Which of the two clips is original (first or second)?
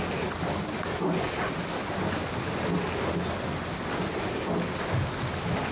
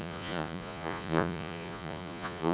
first